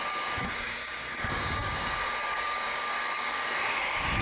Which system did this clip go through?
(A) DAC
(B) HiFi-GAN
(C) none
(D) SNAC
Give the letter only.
A